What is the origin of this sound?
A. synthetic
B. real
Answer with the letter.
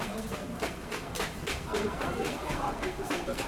A